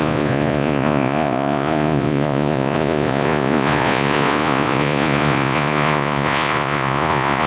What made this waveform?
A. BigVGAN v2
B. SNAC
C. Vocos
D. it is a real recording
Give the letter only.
C